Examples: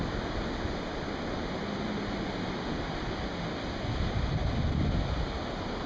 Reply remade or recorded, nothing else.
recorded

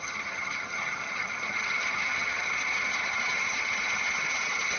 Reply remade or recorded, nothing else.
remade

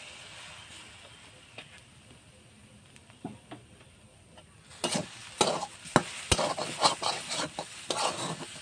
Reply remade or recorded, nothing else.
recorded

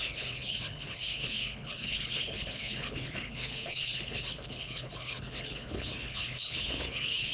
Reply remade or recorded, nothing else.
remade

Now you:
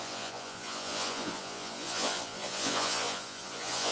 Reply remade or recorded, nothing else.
remade